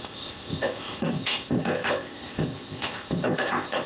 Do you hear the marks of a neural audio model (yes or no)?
yes